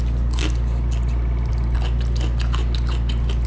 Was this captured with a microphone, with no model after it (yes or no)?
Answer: yes